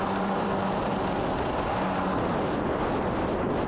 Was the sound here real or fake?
real